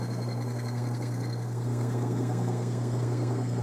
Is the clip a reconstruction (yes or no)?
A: yes